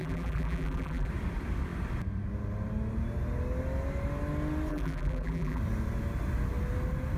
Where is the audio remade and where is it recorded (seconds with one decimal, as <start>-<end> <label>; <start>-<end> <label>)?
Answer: 0.0-1.1 remade; 1.1-4.7 recorded; 4.7-5.6 remade; 5.6-7.2 recorded